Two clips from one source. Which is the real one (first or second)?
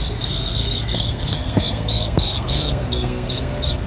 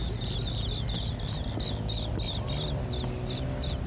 second